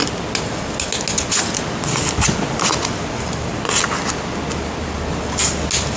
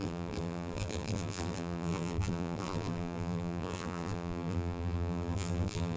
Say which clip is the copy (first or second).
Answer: second